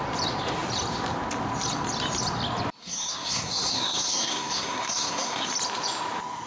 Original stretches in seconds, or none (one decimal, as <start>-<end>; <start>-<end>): 0.0-2.8; 5.5-6.5